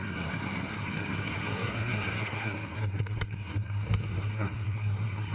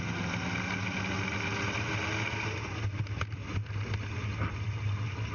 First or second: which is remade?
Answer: first